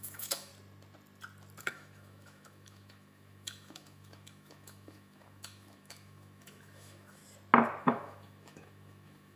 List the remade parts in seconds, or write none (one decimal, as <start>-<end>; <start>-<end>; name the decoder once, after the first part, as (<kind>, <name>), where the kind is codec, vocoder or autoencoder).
0.0-0.5 (autoencoder, DAC-VAE); 1.6-7.2; 7.8-9.4